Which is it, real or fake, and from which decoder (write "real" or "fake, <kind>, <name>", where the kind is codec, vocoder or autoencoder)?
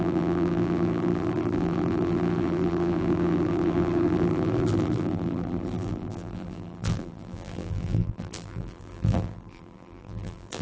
fake, vocoder, BigVGAN v2